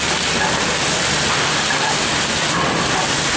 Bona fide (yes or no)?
yes